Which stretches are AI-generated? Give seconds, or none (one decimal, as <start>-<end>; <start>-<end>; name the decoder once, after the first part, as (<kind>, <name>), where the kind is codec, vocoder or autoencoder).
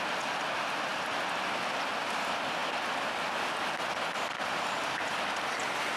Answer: 0.9-1.9 (vocoder, BigVGAN v2)